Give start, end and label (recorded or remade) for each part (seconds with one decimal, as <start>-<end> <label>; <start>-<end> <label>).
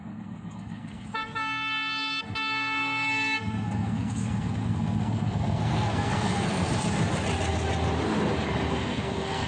0.0-6.7 remade; 6.7-8.7 recorded; 8.7-9.5 remade